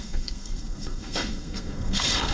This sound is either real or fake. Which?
fake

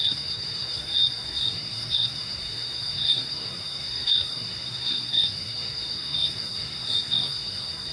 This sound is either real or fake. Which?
fake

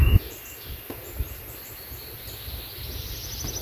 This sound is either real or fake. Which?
real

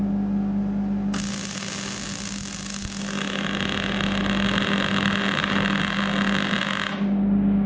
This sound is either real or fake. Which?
real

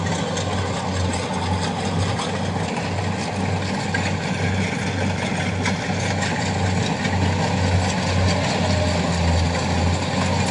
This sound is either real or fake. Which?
real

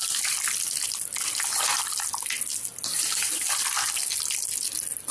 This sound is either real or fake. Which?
real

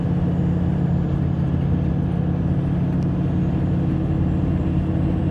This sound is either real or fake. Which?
real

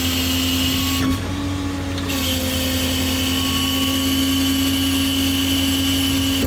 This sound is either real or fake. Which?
real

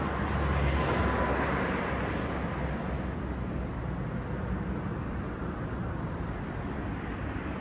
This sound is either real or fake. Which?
real